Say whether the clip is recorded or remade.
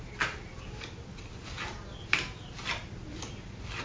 recorded